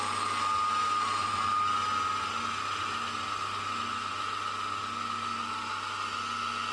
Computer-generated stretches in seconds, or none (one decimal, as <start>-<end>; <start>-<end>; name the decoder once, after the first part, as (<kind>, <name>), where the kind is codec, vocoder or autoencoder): none